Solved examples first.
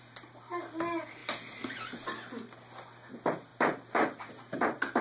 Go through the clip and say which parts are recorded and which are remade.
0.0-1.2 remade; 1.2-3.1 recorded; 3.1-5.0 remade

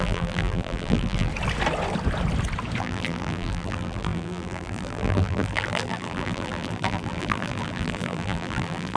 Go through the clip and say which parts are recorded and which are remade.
0.0-1.3 remade; 1.3-2.8 recorded; 2.8-9.0 remade